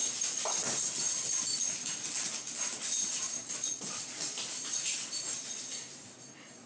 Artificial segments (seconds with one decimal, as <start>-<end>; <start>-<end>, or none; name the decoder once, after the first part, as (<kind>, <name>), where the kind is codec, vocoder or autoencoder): none